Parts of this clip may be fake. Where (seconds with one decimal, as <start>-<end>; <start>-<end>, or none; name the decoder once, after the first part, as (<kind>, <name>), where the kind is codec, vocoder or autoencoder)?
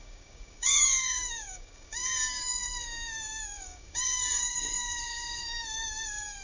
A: 0.0-6.4 (codec, DAC)